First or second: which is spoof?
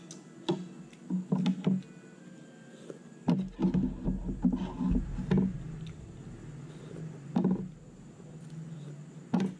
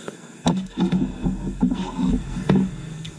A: second